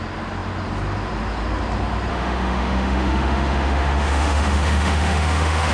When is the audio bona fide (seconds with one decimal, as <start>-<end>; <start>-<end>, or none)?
0.0-2.1